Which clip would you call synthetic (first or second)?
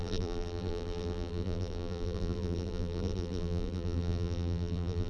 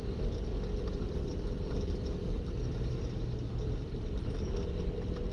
first